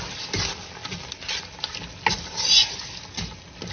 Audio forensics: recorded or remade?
recorded